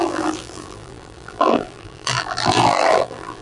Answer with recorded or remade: remade